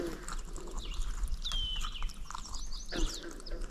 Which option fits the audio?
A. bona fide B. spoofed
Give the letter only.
A